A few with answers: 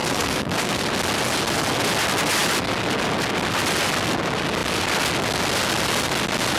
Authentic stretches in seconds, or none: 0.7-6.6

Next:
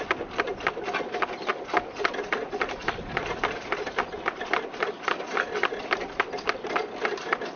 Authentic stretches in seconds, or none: 0.0-7.6

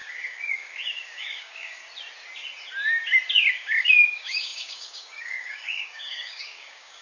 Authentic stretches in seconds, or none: 1.8-3.5

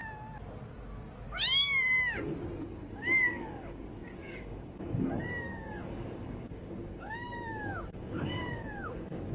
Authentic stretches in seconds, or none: 0.0-2.9

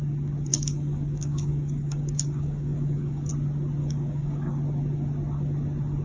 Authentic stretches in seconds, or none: 0.0-0.5; 3.3-3.8; 4.6-6.0